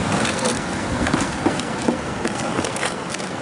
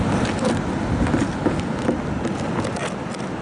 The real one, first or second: second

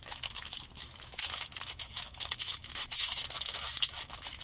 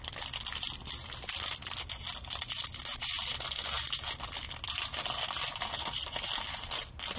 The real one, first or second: second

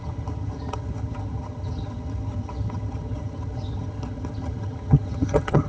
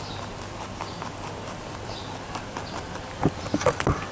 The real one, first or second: second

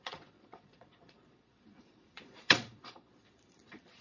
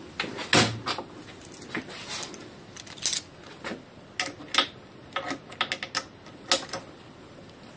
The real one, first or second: second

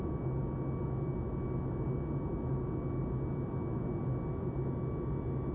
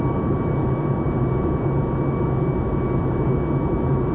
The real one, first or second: first